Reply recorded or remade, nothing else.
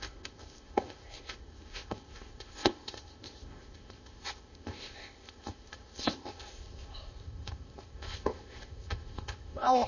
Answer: remade